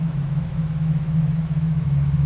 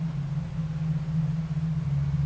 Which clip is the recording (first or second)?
second